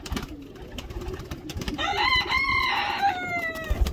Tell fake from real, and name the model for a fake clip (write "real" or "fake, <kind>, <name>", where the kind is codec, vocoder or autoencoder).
fake, vocoder, BigVGAN v2